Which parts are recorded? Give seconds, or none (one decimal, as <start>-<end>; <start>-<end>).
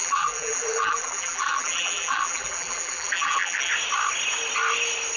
3.7-5.2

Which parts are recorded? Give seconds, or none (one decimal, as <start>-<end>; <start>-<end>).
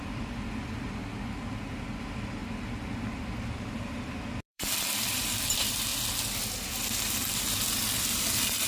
1.0-2.0; 2.4-3.6; 5.9-8.0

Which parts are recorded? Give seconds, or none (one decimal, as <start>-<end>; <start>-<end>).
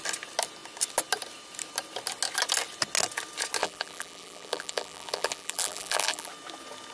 0.0-3.6; 6.3-6.9